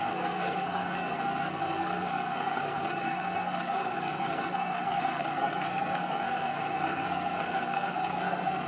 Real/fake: fake